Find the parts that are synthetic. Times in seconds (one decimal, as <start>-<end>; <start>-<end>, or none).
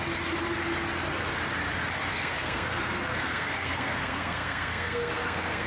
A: 2.1-5.7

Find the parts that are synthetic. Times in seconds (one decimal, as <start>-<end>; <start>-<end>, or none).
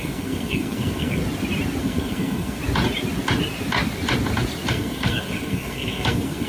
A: 0.0-1.2; 1.8-2.6; 4.7-6.5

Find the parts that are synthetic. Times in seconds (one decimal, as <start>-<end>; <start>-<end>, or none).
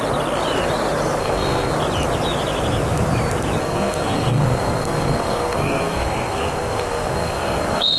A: 1.2-1.7; 3.6-8.0